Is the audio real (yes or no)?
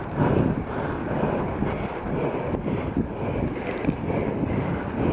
yes